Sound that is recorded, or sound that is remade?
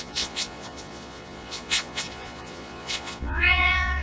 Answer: remade